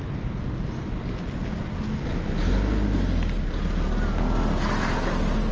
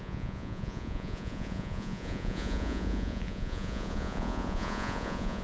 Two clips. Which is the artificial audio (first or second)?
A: second